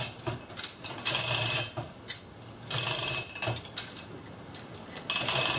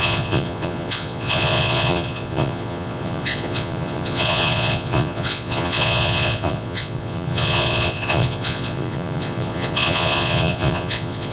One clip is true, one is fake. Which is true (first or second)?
first